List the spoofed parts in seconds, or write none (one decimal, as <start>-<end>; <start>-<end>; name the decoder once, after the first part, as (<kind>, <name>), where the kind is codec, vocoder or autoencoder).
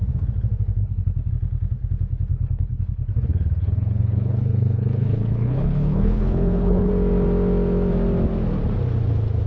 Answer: 0.8-1.3 (codec, HILCodec); 2.3-6.9